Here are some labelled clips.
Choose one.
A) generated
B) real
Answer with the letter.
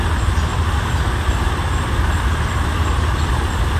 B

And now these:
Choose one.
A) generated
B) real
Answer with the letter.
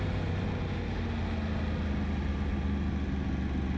B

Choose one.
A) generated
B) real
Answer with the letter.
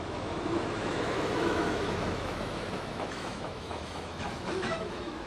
A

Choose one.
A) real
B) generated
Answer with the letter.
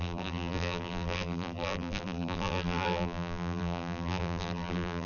B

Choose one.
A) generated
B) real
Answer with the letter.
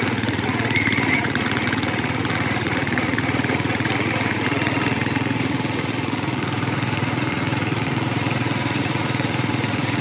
A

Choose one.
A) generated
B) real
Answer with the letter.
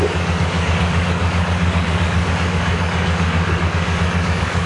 A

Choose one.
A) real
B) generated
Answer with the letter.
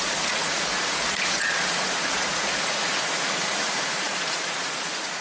B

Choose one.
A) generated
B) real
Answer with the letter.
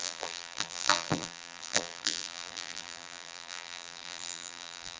A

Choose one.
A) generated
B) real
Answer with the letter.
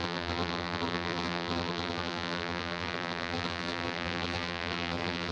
A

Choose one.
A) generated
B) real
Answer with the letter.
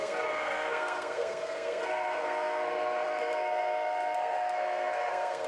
A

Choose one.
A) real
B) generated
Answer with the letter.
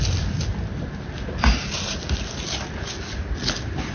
A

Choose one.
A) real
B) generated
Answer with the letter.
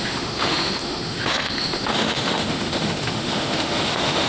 B